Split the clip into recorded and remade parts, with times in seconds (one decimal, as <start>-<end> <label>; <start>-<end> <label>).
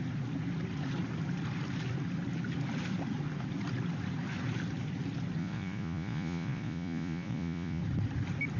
0.0-5.4 recorded; 5.4-7.8 remade; 7.8-8.6 recorded